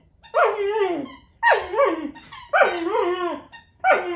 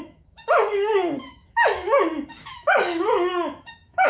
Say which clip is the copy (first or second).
second